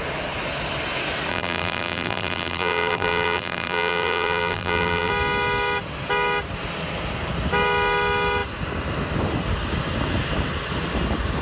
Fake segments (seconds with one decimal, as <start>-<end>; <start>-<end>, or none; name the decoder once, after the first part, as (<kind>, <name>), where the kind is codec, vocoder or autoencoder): 1.3-5.1 (vocoder, BigVGAN v2)